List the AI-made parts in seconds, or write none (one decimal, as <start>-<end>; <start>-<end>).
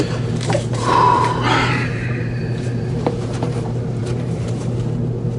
0.0-5.4